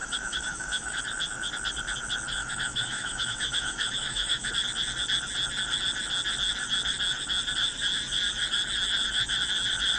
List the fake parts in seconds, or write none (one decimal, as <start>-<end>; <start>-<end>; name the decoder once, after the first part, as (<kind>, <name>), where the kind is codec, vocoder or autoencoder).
0.0-1.0 (autoencoder, DAC-VAE); 2.4-4.5